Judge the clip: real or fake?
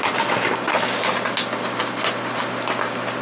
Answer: real